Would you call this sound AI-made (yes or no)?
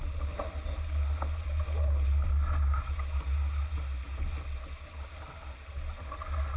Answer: no